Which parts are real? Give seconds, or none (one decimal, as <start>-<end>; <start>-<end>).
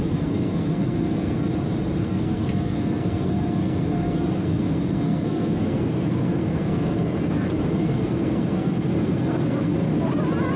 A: 1.5-2.0; 9.9-10.6